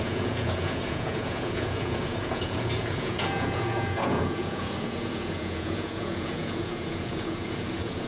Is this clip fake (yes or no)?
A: yes